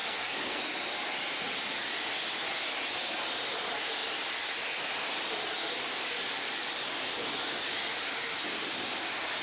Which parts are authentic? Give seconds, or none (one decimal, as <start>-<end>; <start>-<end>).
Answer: 0.6-9.4